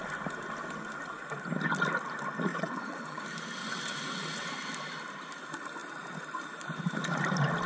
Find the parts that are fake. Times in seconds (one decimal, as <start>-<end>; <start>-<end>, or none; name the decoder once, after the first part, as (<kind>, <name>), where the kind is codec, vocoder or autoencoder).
2.5-3.2 (vocoder, WaveNeXt); 3.6-4.5